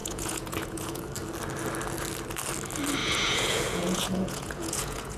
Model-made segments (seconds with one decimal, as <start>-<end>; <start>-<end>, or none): 0.0-1.0; 3.0-5.2